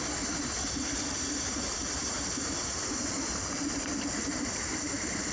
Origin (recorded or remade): recorded